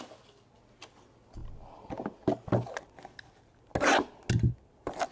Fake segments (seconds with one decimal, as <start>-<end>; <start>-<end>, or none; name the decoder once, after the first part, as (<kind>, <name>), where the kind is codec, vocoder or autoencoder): none